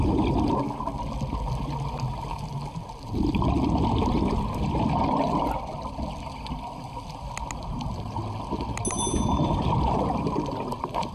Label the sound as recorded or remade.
recorded